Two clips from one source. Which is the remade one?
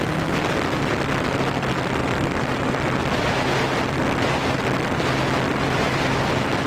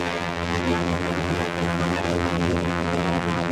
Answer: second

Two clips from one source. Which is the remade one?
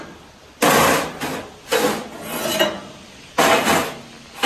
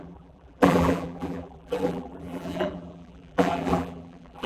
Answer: second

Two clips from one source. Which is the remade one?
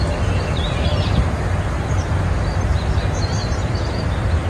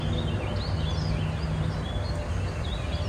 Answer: first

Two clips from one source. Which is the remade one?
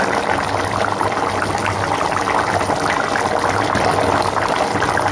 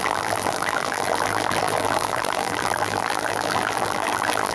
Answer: second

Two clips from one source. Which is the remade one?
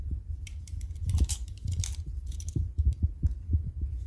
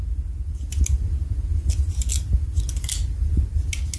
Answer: first